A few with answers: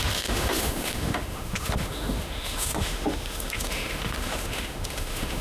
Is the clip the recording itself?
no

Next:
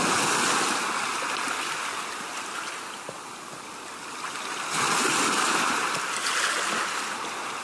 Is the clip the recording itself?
yes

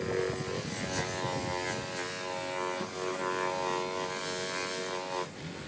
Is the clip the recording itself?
yes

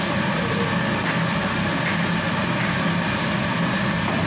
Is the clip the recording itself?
yes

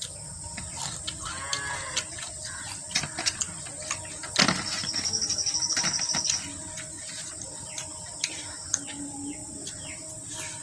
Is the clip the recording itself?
yes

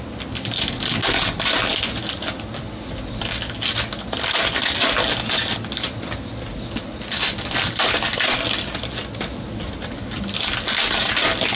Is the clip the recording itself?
yes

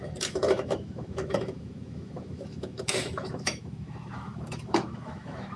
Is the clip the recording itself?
no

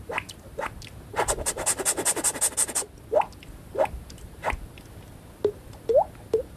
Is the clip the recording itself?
yes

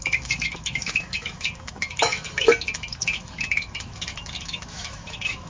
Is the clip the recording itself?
no